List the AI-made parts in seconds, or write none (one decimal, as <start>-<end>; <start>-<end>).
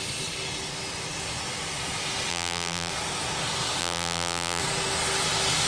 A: 2.3-2.9; 3.8-4.6